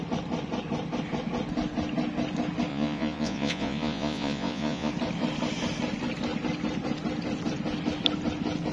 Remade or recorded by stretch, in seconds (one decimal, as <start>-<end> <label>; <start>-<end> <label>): 0.0-2.7 recorded; 2.7-4.9 remade; 4.9-8.7 recorded